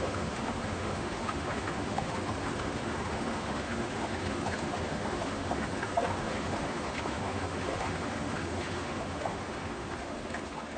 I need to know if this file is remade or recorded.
remade